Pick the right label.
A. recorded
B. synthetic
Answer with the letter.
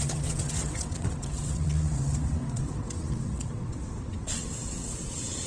B